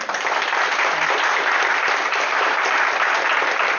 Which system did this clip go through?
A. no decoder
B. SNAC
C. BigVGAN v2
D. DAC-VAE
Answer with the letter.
A